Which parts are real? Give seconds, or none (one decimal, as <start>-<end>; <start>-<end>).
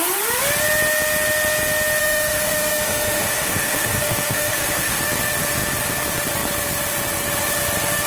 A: 0.0-2.0; 5.0-8.1